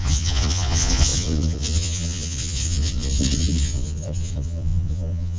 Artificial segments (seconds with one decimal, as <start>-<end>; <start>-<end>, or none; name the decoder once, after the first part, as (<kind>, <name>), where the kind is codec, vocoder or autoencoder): 0.0-5.4 (vocoder, Vocos)

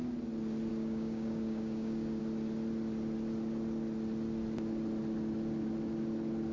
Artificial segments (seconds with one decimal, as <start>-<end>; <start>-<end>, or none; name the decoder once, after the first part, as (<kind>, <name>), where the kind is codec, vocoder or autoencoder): 0.7-2.2 (codec, DAC)

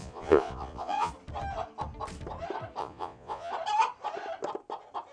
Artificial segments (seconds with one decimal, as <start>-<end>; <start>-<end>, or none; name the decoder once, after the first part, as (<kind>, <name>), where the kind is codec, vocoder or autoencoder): 0.0-1.1 (vocoder, Vocos); 2.8-3.5

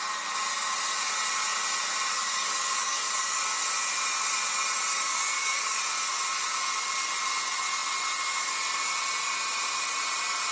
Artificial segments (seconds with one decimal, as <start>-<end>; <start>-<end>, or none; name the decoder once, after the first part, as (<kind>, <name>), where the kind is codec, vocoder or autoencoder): 2.1-3.4 (codec, DAC); 4.9-5.8

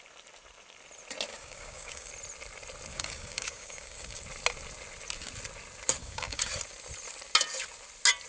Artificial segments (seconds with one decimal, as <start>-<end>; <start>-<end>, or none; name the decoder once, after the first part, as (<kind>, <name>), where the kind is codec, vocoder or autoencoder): 1.3-2.1 (codec, DAC); 2.9-4.2; 6.0-6.5

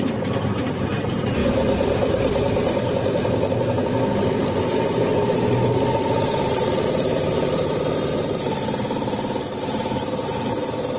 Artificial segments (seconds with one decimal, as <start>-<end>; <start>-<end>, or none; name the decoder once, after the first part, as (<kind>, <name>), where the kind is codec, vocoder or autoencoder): 0.0-1.4 (vocoder, BigVGAN v2); 6.0-11.0

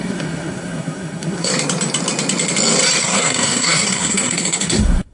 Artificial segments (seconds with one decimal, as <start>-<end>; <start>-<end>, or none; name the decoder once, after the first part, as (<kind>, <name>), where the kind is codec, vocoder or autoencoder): 0.0-1.5 (codec, SNAC); 3.0-5.1